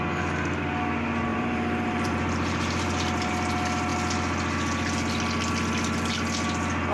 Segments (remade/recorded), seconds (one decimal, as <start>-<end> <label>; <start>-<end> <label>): 0.0-1.3 recorded; 1.3-3.3 remade; 3.3-6.9 recorded